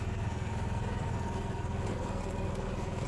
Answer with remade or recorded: remade